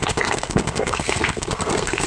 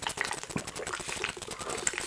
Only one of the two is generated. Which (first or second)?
first